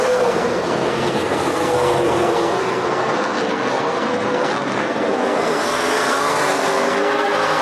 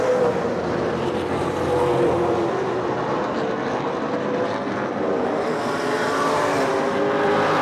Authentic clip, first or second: second